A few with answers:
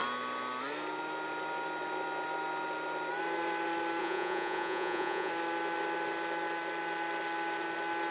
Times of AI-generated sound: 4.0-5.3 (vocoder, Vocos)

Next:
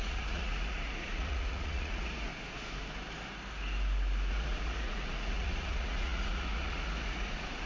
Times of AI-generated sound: 0.0-2.3 (vocoder, Vocos); 4.3-7.7

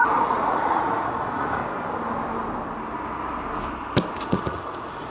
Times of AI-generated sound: 0.0-1.6 (vocoder, Vocos); 4.2-5.1

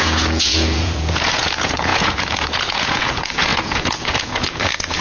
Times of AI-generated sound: 0.0-5.0 (vocoder, Vocos)

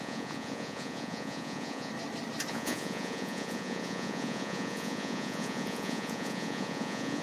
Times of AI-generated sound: 0.0-1.9 (vocoder, Vocos); 2.5-7.2